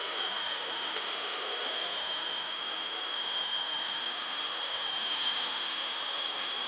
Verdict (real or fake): fake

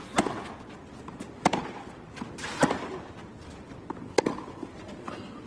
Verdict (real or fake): real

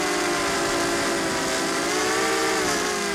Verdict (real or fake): real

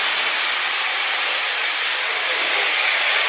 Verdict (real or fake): fake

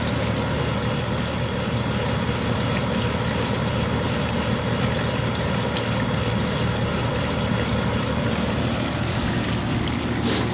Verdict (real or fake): real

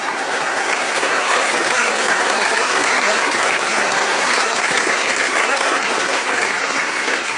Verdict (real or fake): fake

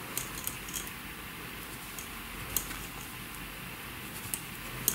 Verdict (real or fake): real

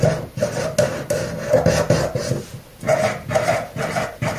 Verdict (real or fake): real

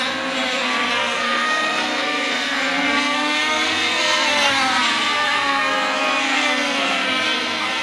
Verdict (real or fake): fake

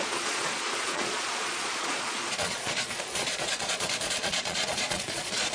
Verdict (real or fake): fake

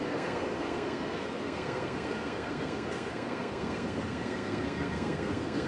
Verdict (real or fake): fake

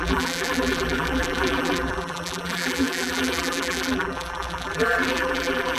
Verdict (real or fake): fake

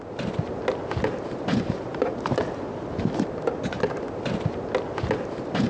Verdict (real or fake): real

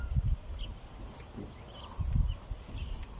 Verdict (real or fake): real